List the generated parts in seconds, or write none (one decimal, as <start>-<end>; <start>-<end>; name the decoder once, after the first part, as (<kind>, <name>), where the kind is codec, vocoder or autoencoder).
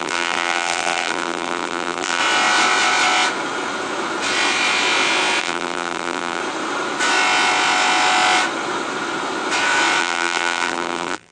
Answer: 0.0-2.2 (vocoder, BigVGAN v2); 5.4-6.4; 10.0-11.3